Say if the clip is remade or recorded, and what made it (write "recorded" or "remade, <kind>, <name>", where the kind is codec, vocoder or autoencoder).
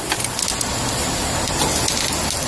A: recorded